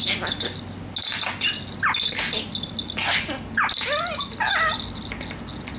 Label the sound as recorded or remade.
recorded